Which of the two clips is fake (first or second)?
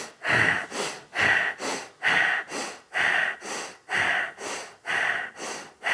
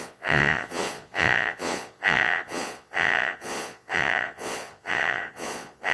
second